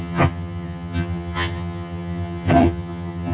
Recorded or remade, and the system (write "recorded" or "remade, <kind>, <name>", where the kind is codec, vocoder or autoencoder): remade, vocoder, HiFi-GAN